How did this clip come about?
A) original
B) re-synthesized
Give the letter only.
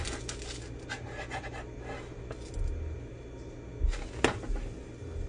A